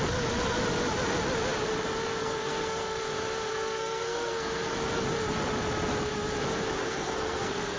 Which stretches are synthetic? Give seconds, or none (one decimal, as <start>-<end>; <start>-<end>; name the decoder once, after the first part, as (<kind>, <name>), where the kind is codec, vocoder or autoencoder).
2.2-3.0 (codec, SNAC); 3.5-4.7; 6.8-7.8